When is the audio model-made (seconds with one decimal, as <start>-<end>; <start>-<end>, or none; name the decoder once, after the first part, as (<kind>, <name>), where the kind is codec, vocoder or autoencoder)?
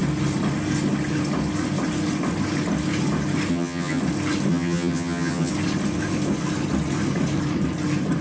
3.5-4.0 (vocoder, HiFi-GAN); 4.5-5.5